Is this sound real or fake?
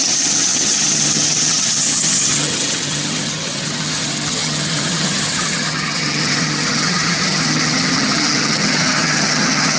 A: fake